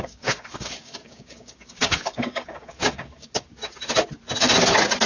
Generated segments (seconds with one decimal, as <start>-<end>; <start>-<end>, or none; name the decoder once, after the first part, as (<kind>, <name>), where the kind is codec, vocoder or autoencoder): 0.0-3.5 (codec, DAC)